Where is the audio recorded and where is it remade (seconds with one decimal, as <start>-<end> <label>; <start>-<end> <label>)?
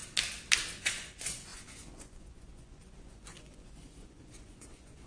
0.0-0.8 recorded; 0.8-5.1 remade